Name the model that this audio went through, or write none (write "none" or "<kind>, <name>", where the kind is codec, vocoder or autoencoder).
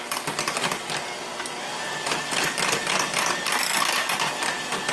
none